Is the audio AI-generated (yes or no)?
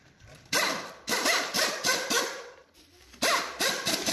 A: yes